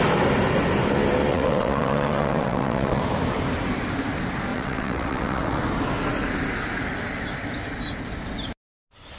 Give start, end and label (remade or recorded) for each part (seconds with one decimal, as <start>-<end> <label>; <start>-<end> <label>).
0.0-1.3 recorded; 1.3-3.0 remade; 3.0-4.5 recorded; 4.5-5.6 remade; 5.6-9.2 recorded

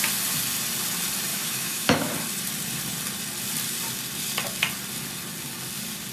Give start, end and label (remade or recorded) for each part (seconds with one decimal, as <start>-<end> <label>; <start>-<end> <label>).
0.0-1.3 recorded; 1.3-2.1 remade; 2.1-6.1 recorded